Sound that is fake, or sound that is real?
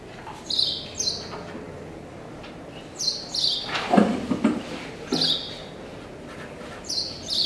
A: real